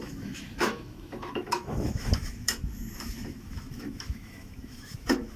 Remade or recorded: remade